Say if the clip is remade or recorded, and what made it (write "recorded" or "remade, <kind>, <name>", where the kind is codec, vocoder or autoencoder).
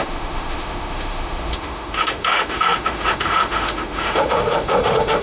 remade, autoencoder, DAC-VAE